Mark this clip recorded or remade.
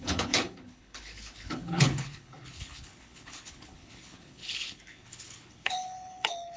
remade